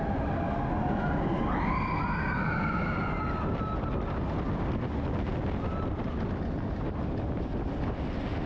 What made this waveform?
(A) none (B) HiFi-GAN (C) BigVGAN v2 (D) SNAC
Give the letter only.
A